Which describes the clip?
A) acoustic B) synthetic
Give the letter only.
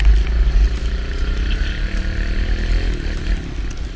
A